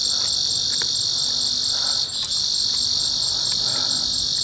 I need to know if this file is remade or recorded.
recorded